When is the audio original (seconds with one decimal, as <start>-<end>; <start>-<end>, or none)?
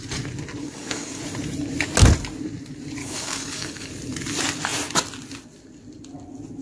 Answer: 0.0-0.6; 1.2-3.0; 3.9-6.6